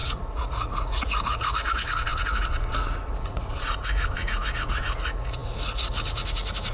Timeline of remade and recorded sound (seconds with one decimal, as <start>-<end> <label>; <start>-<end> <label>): 0.0-6.7 remade

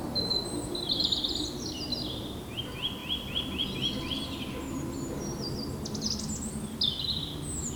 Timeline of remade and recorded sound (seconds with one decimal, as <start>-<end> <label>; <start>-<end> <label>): 0.0-7.8 recorded